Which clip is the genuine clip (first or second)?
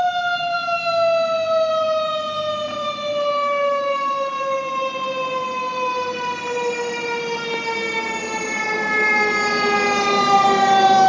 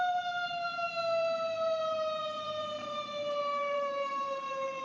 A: first